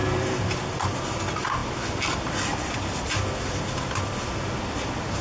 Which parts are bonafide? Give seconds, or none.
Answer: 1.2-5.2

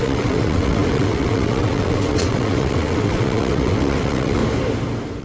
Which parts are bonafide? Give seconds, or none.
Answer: 4.4-5.2

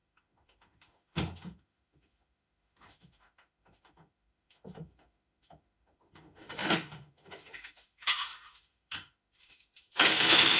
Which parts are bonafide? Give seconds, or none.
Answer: none

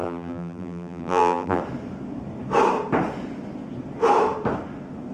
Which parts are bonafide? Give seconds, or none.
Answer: 1.6-5.1

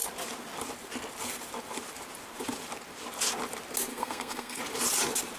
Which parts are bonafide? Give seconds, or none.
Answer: 0.0-3.9; 4.6-5.4

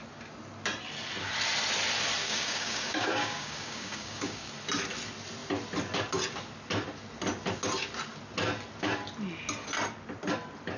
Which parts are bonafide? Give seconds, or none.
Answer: 0.0-2.2; 4.5-10.8

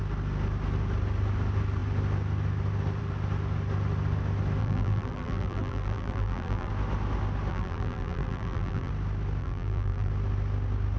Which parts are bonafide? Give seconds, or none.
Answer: 0.0-4.6; 6.7-7.5; 8.9-9.4; 10.1-11.0